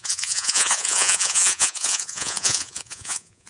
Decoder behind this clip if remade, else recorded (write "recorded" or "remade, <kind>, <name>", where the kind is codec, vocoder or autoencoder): remade, vocoder, Vocos